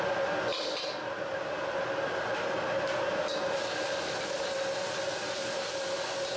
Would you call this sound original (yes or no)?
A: yes